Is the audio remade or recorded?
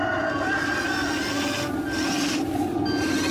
recorded